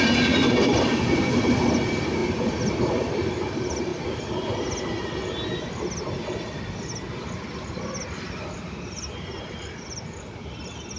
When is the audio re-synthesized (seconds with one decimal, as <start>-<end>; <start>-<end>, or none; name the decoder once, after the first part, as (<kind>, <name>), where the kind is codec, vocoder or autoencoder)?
0.0-2.2 (vocoder, BigVGAN v2); 2.8-3.9; 7.1-11.0